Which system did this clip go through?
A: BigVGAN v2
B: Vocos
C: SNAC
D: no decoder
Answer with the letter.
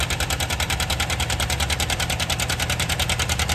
D